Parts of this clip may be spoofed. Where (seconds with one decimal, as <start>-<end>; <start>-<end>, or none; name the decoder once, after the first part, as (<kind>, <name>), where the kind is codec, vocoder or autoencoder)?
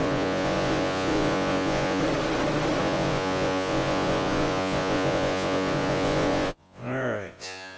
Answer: 0.0-2.0 (vocoder, Vocos); 2.8-7.8